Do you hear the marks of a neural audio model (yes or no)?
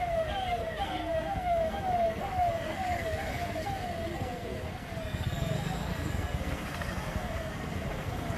yes